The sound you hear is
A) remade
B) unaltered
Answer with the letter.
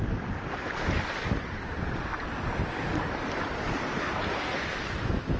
B